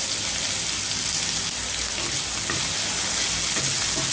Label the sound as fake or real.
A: real